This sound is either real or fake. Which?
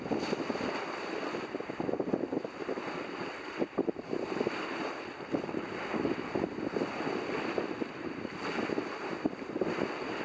real